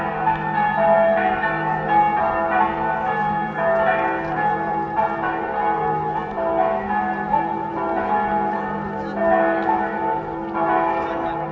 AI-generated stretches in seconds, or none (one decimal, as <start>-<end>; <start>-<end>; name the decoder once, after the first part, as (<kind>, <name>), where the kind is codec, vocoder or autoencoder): none